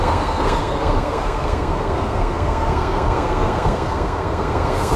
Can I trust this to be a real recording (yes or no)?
no